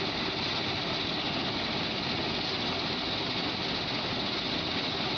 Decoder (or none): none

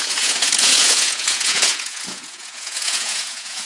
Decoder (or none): vocoder, Vocos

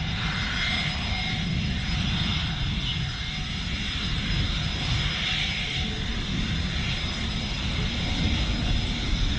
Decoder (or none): none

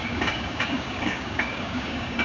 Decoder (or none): codec, DAC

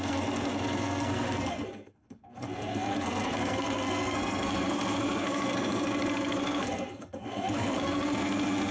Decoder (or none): codec, SNAC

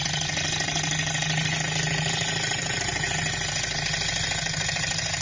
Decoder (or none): none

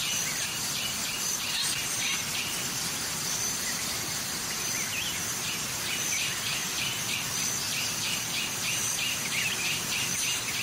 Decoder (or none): vocoder, BigVGAN v2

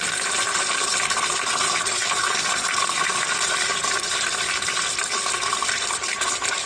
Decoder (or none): vocoder, BigVGAN v2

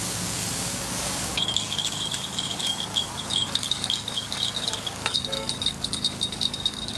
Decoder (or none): codec, DAC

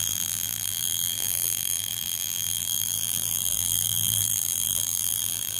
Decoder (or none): vocoder, BigVGAN v2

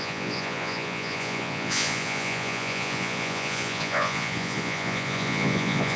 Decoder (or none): vocoder, Vocos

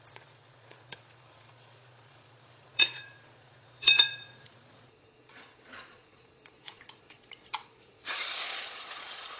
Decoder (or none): vocoder, Vocos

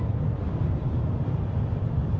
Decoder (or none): vocoder, BigVGAN v2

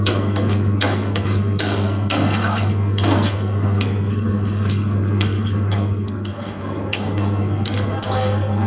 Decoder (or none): codec, SNAC